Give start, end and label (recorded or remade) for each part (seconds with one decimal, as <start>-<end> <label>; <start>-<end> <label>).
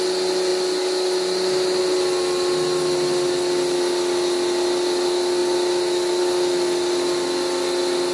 0.0-8.1 recorded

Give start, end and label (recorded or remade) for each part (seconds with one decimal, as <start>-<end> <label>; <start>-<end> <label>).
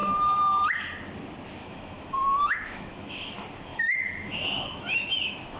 0.0-0.5 remade; 0.5-1.6 recorded; 1.6-3.3 remade; 3.3-3.7 recorded; 3.7-5.6 remade